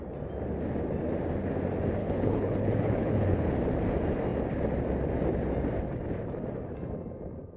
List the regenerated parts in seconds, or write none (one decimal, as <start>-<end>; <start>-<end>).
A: 2.0-3.5